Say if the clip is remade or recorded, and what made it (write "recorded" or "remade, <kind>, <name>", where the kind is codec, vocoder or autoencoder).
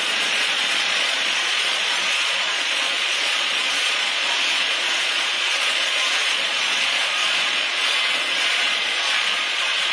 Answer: remade, vocoder, Vocos